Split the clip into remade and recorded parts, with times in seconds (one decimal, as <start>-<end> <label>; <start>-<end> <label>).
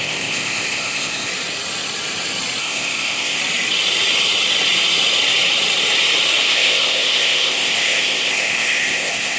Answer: 0.0-1.3 remade; 1.3-2.6 recorded; 2.6-3.4 remade; 3.4-6.4 recorded; 6.4-9.4 remade